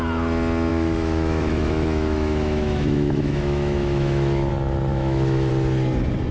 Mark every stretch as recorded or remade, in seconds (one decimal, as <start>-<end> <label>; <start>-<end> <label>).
0.0-0.7 recorded; 0.7-4.5 remade; 4.5-4.9 recorded; 4.9-5.5 remade; 5.5-6.3 recorded